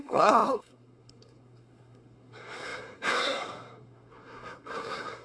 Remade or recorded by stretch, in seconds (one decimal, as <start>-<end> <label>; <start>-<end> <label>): 0.0-5.2 remade